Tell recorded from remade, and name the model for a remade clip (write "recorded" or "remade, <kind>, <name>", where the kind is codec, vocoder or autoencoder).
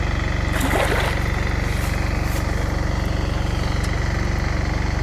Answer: recorded